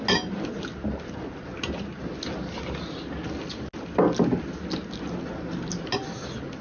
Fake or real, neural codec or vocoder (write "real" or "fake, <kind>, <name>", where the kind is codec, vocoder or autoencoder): real